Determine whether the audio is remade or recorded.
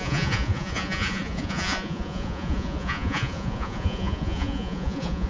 remade